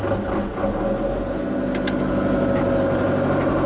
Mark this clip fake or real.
real